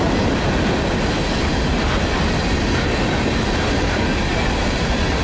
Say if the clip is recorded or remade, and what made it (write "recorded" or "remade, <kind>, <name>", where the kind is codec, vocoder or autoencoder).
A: recorded